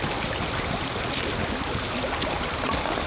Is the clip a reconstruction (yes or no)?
no